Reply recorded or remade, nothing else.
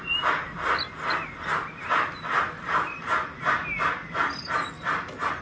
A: recorded